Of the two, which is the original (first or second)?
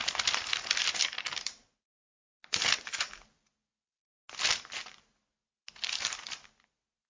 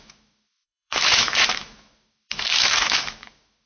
first